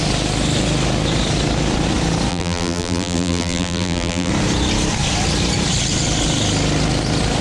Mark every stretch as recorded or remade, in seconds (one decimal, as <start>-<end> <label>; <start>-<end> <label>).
0.0-2.3 recorded; 2.3-4.3 remade; 4.3-7.4 recorded